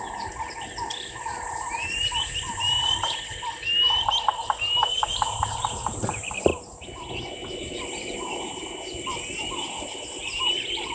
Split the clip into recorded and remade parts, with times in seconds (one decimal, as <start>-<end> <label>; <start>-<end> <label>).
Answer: 0.0-10.9 recorded